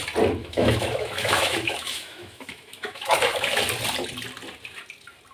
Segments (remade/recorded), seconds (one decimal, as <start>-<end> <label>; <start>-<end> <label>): 0.0-0.4 recorded; 0.4-3.6 remade; 3.6-5.3 recorded